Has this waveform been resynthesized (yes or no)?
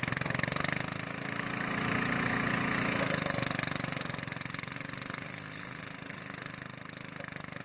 no